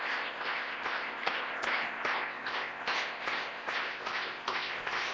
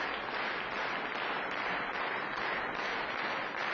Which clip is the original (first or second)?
second